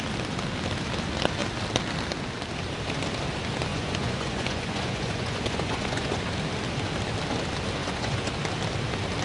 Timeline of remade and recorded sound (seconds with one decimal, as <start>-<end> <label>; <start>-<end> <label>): 0.0-3.7 recorded; 3.7-6.2 remade; 6.2-7.8 recorded; 7.8-8.3 remade; 8.3-9.2 recorded